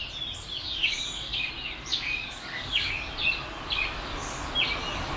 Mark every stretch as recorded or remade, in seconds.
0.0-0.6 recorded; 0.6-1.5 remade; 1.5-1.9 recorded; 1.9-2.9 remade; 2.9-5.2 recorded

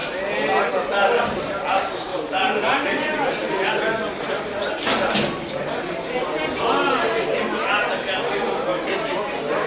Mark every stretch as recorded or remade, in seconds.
0.0-2.1 recorded; 2.1-3.3 remade; 3.3-9.7 recorded

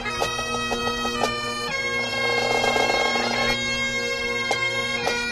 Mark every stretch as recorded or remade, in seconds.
0.0-5.3 recorded